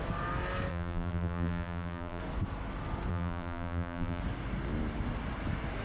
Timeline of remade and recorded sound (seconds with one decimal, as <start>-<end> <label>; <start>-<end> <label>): 0.0-0.7 recorded; 0.7-2.2 remade; 2.2-3.1 recorded; 3.1-4.2 remade; 4.2-5.8 recorded